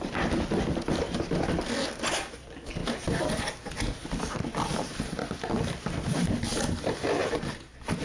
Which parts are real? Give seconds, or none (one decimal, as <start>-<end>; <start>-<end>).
0.0-4.7; 5.3-8.0